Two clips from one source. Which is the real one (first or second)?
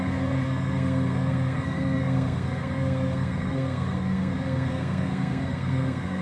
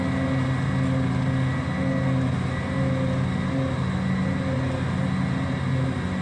second